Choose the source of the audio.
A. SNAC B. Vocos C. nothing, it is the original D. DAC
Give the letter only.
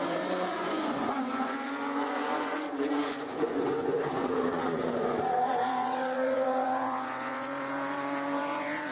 B